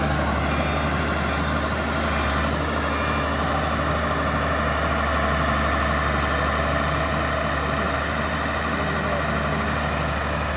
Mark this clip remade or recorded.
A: recorded